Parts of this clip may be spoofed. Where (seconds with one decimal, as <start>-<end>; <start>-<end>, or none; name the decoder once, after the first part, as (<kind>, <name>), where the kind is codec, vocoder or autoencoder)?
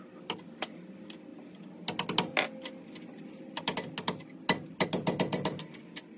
none